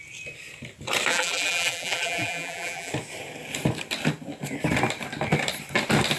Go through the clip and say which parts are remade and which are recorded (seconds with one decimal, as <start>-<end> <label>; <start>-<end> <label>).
0.0-1.1 recorded; 1.1-2.9 remade; 2.9-6.2 recorded